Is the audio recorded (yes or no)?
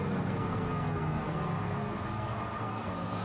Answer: no